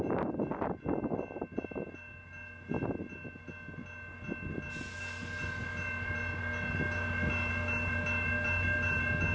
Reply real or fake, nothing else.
real